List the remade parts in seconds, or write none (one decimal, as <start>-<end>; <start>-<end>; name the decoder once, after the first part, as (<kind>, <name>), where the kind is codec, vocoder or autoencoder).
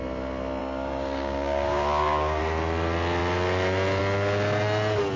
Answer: 0.6-2.4 (codec, DAC)